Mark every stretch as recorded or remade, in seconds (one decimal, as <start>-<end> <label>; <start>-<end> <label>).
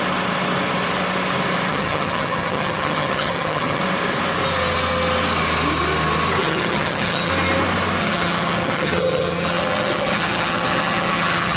0.0-1.7 recorded; 1.7-3.8 remade; 3.8-6.4 recorded; 6.4-7.3 remade; 7.3-8.0 recorded; 8.0-11.6 remade